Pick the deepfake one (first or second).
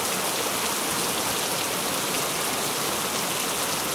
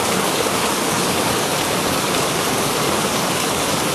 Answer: second